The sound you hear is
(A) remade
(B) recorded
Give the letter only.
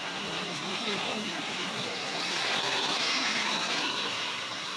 A